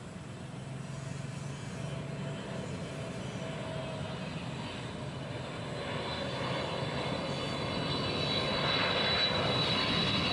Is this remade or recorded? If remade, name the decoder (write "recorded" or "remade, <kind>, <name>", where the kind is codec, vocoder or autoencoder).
recorded